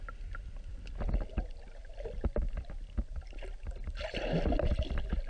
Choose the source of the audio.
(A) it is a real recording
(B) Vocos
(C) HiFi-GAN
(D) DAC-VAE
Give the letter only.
A